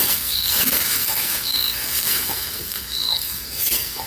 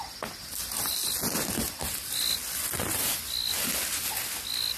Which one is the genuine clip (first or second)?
second